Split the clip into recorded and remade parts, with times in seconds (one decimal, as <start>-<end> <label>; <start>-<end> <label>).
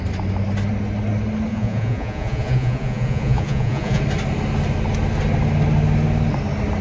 0.0-1.5 recorded; 1.5-4.0 remade; 4.0-6.8 recorded